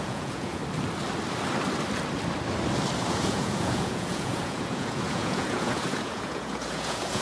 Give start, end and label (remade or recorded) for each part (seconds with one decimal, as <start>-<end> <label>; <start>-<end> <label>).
0.0-0.6 remade; 0.6-3.1 recorded; 3.1-7.2 remade